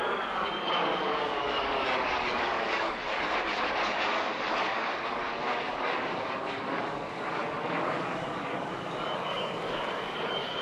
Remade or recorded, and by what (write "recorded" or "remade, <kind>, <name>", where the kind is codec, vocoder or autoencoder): remade, codec, DAC